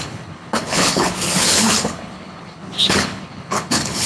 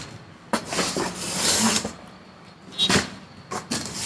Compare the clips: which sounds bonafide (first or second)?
second